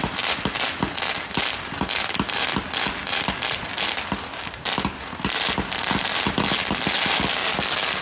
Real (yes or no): yes